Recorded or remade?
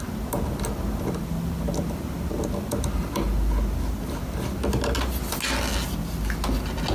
recorded